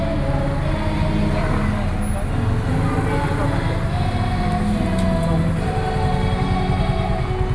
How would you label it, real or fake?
real